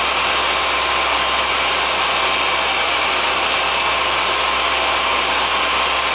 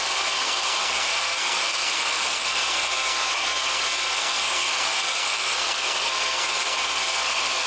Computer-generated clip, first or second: second